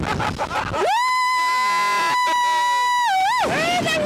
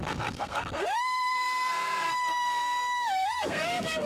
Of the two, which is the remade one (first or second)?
second